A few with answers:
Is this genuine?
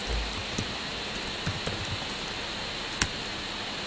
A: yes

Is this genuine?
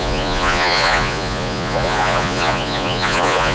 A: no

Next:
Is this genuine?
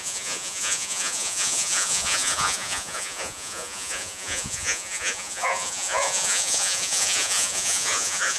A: no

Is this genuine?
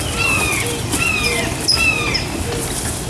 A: yes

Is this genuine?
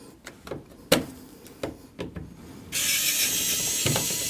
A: yes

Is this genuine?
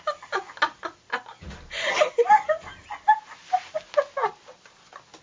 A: yes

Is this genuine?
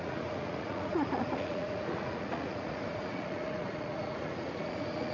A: no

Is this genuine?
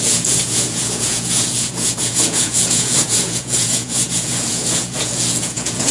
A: no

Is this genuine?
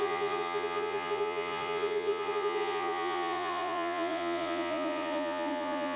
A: no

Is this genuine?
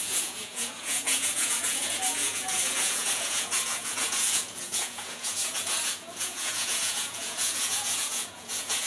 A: no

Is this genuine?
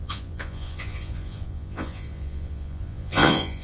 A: no